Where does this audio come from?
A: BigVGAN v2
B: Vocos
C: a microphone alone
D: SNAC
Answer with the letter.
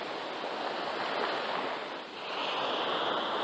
C